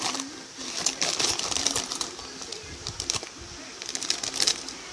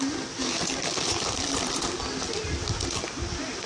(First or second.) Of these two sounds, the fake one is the first